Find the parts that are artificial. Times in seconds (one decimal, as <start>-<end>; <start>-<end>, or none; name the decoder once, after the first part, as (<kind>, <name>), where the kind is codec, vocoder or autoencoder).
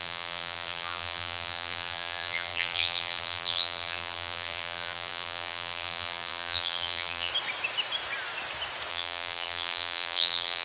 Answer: 0.0-7.3 (vocoder, BigVGAN v2); 8.9-10.6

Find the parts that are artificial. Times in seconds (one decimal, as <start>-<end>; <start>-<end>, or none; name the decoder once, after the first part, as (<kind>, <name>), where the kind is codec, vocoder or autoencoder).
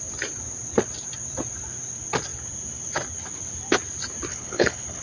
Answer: 4.3-5.0 (codec, HILCodec)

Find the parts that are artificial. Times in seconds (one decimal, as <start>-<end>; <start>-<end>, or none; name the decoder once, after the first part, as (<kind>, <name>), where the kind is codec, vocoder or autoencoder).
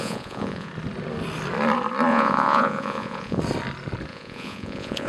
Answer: 0.0-0.7 (vocoder, Vocos); 2.1-3.4; 4.1-5.1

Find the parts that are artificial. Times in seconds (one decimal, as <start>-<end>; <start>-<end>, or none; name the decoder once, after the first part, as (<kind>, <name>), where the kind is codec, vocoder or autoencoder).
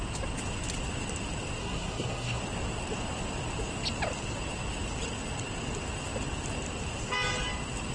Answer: 1.6-2.4 (codec, SNAC)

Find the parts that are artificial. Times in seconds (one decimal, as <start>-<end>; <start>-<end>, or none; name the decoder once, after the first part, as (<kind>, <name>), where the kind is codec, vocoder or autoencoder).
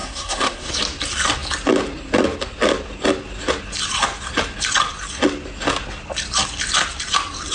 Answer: 0.0-0.7 (codec, SNAC)